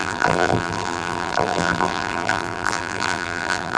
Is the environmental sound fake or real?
fake